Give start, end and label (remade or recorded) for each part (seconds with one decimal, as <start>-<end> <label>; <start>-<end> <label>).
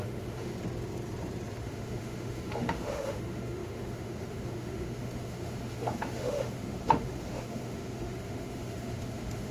0.0-0.5 remade; 0.5-1.6 recorded; 1.6-9.5 remade